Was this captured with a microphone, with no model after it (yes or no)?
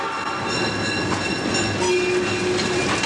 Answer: yes